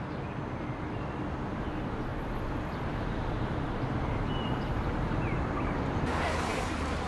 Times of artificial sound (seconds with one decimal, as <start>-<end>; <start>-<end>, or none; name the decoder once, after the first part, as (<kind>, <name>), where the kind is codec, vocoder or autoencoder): 2.1-6.0 (vocoder, BigVGAN v2)